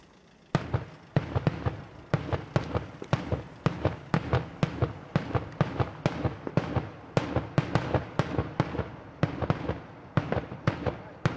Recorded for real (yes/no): yes